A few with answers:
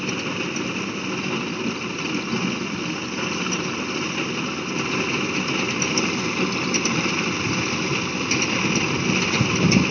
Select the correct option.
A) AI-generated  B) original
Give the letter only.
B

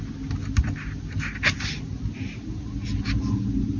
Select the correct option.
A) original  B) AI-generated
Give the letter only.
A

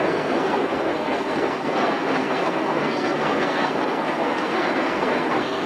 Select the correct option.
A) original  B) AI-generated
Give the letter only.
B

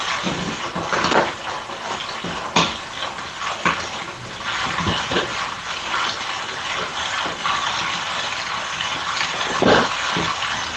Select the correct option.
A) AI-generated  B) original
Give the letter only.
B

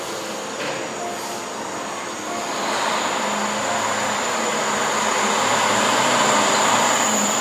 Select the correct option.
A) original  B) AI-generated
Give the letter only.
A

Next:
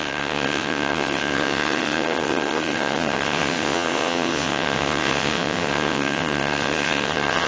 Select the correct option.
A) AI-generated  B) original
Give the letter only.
A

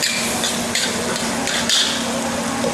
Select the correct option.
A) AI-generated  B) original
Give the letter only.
B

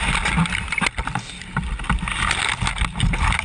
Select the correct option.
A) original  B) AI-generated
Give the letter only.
A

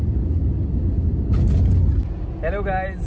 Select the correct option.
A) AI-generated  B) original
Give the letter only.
B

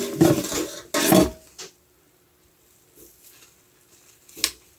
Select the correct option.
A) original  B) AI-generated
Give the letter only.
A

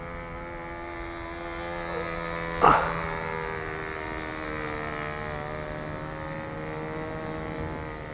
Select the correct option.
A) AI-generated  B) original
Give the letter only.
B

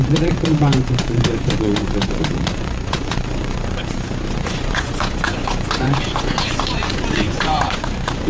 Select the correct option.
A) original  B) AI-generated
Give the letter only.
B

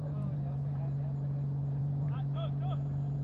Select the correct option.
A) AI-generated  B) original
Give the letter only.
A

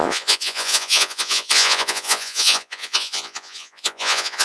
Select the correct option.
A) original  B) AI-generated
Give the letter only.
B